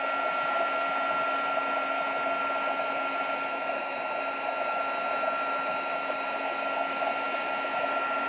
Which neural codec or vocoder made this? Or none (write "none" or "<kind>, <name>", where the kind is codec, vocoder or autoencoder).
none